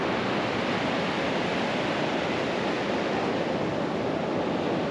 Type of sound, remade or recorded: recorded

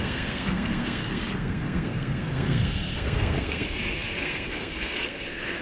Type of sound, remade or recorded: remade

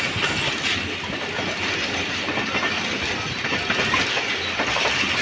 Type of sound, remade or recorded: recorded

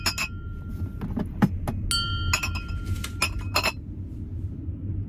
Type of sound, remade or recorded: recorded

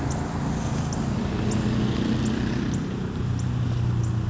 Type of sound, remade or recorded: recorded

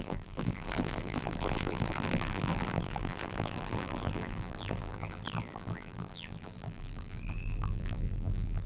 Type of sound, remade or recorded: remade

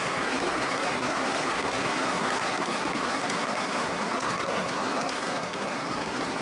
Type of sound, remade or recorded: remade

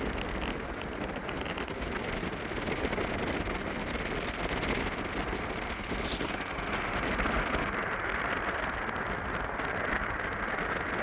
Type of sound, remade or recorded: recorded